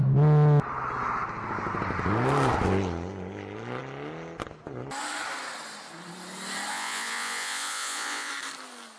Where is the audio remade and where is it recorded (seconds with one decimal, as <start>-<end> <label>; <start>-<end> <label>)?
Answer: 0.0-6.7 recorded; 6.7-8.3 remade; 8.3-9.0 recorded